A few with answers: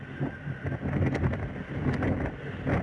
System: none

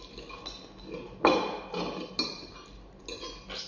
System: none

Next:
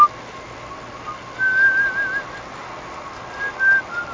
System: none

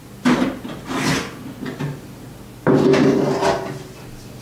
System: none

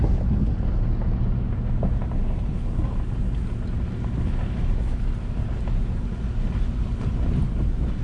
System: none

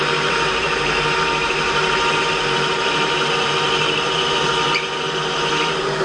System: vocoder, BigVGAN v2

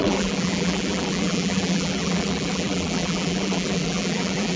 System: vocoder, BigVGAN v2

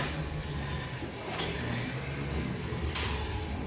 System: none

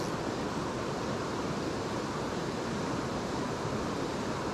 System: none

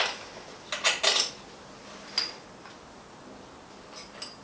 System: none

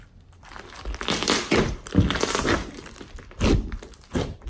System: none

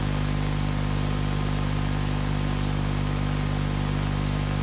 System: none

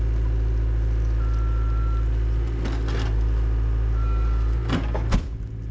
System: none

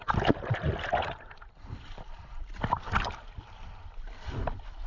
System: vocoder, BigVGAN v2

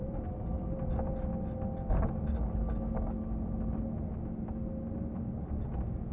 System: none